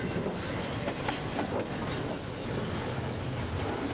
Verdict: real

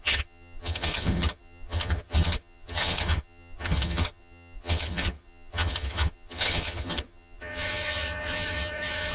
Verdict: fake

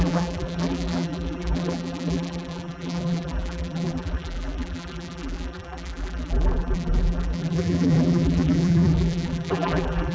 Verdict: fake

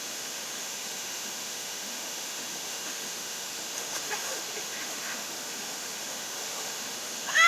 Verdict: fake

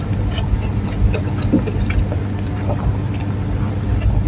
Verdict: real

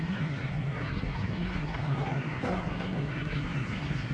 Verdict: fake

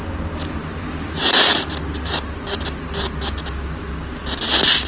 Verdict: real